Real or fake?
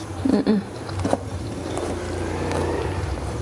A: fake